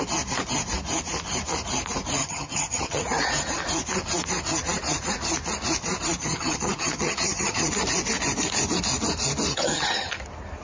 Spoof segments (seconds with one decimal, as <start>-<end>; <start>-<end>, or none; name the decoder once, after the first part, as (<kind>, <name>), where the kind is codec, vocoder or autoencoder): 2.2-3.0 (vocoder, HiFi-GAN); 6.2-7.7; 9.5-10.2